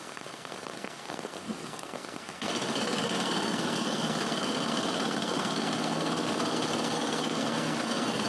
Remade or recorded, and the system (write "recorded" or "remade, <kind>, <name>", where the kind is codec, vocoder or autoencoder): remade, codec, SNAC